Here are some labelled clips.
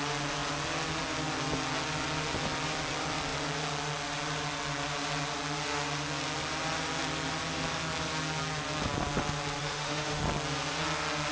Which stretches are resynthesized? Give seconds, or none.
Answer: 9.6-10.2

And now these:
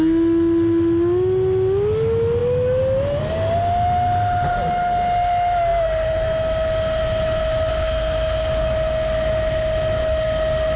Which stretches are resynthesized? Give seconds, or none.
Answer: none

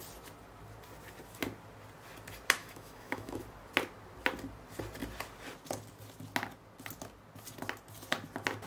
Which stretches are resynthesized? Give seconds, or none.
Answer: 2.6-3.4

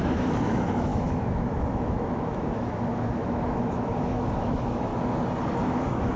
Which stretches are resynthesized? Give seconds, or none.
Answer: 0.0-4.9; 5.5-6.2

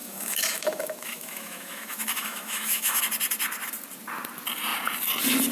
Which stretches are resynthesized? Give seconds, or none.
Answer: 0.0-3.0

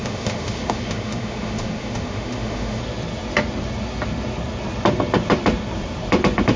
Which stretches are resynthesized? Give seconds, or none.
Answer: 0.0-2.8

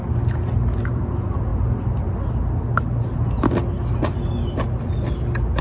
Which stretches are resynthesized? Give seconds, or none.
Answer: none